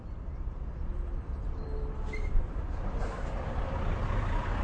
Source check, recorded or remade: remade